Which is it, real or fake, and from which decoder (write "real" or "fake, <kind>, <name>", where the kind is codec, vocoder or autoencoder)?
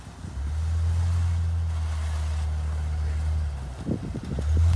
real